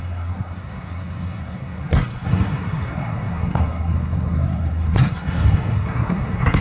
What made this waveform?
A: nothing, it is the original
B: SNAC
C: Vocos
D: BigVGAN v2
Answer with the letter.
B